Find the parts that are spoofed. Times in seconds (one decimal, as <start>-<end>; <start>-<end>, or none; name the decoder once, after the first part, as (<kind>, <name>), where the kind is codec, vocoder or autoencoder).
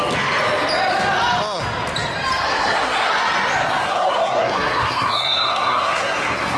2.5-3.1 (codec, SNAC); 3.8-6.6